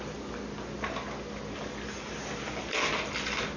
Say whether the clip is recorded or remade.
recorded